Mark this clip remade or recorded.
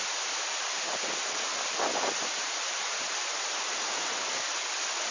recorded